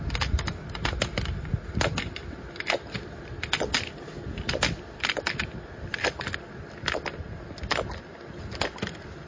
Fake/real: real